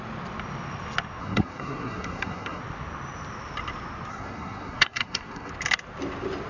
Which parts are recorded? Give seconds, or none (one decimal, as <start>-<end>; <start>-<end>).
0.0-1.2; 2.6-4.1; 5.5-6.5